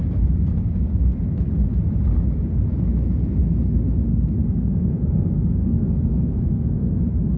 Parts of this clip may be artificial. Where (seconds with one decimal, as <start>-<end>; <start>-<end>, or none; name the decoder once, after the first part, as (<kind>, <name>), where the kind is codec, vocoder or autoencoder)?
4.4-7.0 (codec, SNAC)